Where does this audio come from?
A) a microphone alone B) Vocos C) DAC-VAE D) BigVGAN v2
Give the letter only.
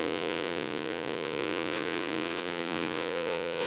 B